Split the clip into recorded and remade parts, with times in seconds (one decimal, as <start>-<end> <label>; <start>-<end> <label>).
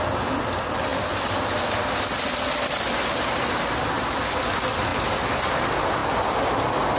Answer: 0.0-7.0 recorded